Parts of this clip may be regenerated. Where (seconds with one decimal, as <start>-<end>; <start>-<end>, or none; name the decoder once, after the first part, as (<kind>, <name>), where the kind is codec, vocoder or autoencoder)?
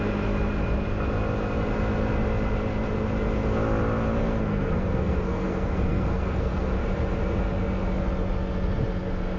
4.2-6.7 (codec, SNAC)